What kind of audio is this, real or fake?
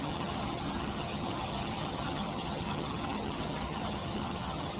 fake